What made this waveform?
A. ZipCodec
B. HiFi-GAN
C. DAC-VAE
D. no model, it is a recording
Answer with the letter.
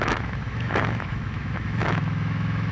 C